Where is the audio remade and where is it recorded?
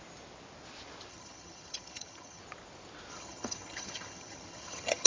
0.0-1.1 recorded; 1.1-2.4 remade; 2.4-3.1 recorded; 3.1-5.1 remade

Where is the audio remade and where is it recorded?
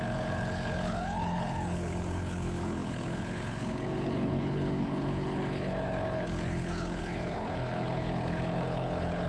0.0-9.3 remade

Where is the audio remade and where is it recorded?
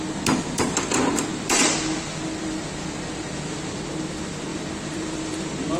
0.0-1.3 recorded; 1.3-3.9 remade; 3.9-4.5 recorded; 4.5-5.8 remade